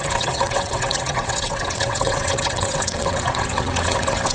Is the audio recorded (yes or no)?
no